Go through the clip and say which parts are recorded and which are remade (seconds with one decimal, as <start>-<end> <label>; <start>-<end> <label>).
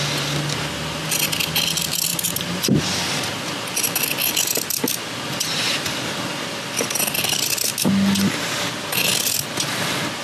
0.0-2.1 recorded; 2.1-2.8 remade; 2.8-10.2 recorded